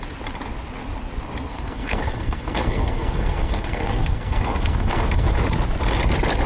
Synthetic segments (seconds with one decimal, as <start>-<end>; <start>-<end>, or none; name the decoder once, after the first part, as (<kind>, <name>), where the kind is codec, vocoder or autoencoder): 1.5-5.4 (codec, SNAC)